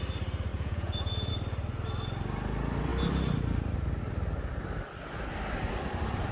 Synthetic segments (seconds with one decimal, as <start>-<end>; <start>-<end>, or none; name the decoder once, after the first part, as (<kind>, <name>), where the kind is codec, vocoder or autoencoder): 0.5-1.3 (vocoder, Vocos)